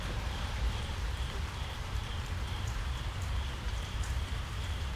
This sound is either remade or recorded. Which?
remade